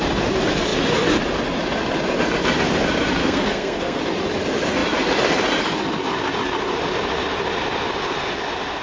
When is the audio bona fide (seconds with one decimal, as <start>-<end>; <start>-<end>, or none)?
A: 0.0-3.2; 4.0-8.8